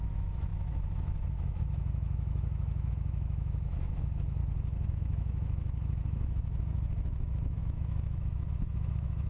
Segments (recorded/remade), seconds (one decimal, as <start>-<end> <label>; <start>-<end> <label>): 0.0-4.4 remade; 4.4-4.9 recorded; 4.9-9.3 remade